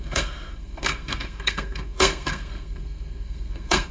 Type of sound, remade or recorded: remade